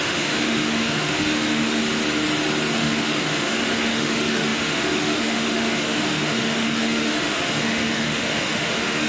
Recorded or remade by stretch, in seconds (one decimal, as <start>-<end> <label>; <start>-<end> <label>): 0.0-1.8 remade; 1.8-2.7 recorded; 2.7-9.1 remade